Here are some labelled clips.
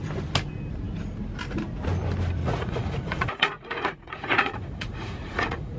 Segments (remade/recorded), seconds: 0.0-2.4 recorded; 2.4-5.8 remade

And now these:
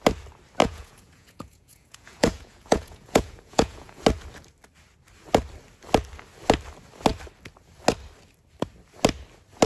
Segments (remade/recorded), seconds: 0.0-0.6 recorded; 0.6-4.0 remade; 4.0-9.7 recorded

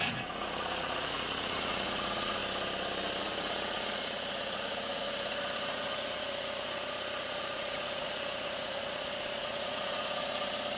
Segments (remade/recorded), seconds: 0.0-2.4 remade; 2.4-3.2 recorded; 3.2-10.8 remade

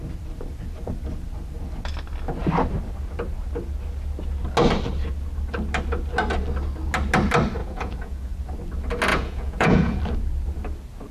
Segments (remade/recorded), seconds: 0.0-7.6 recorded; 7.6-8.3 remade; 8.3-9.1 recorded; 9.1-10.0 remade; 10.0-11.1 recorded